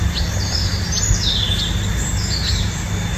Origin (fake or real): real